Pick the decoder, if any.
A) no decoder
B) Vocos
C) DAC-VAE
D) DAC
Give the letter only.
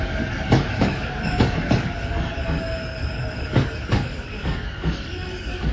D